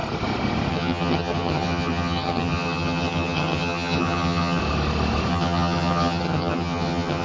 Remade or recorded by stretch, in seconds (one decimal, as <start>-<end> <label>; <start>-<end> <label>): 0.0-0.7 recorded; 0.7-4.6 remade; 4.6-5.3 recorded; 5.3-7.2 remade